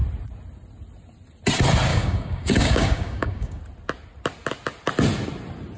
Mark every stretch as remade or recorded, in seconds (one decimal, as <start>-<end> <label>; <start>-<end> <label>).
0.0-1.9 recorded; 1.9-3.6 remade; 3.6-5.8 recorded